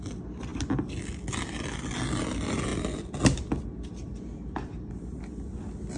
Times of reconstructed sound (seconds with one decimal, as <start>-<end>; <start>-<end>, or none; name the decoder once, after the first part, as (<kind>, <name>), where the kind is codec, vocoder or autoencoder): none